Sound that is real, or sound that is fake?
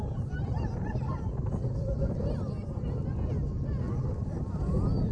real